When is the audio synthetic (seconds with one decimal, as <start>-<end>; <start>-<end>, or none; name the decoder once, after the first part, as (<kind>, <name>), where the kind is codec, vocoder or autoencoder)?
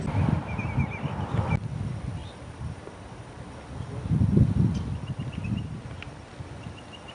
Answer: 2.2-3.5 (vocoder, BigVGAN v2)